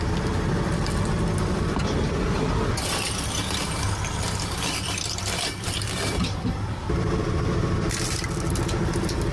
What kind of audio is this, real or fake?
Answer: fake